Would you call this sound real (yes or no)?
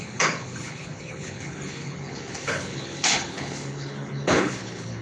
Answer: no